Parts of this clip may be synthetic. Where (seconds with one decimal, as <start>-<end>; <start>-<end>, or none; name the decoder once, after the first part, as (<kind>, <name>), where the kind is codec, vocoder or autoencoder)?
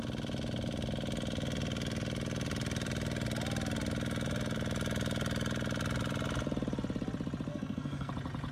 7.5-8.1 (codec, SNAC)